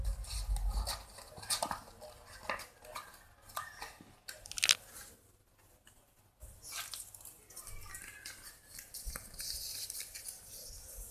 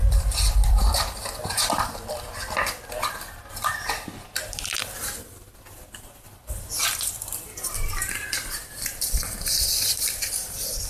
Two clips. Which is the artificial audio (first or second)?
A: second